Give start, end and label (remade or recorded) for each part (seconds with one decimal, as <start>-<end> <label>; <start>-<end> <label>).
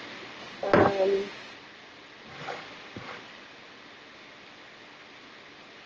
0.0-5.9 recorded